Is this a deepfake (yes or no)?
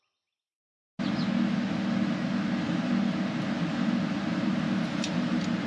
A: no